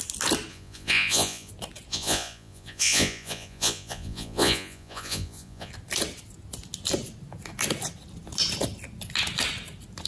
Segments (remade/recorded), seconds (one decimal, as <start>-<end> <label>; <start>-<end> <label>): 0.0-0.5 recorded; 0.5-1.5 remade; 1.5-1.9 recorded; 1.9-5.7 remade; 5.7-10.1 recorded